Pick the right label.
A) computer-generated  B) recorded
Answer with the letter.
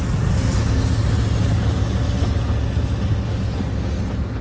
B